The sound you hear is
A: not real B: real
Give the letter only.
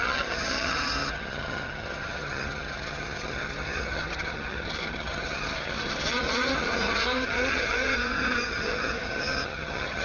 A